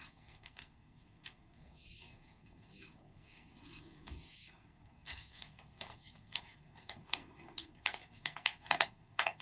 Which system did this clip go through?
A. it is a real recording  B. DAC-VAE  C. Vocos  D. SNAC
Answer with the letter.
D